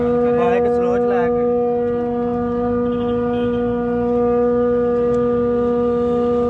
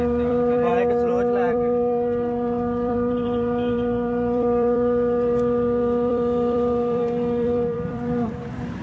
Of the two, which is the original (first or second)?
first